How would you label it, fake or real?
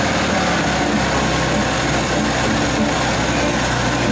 real